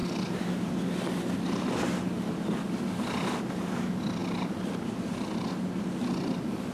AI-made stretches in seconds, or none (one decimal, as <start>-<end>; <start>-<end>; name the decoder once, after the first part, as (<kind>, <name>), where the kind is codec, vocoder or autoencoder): none